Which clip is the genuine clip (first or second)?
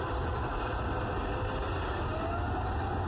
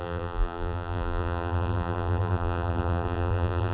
first